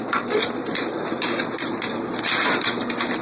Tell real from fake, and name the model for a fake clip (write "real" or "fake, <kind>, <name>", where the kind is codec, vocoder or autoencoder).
fake, vocoder, BigVGAN v2